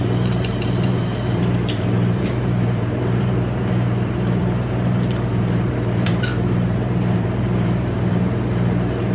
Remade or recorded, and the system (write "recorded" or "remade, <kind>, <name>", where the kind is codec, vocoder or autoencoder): remade, vocoder, BigVGAN v2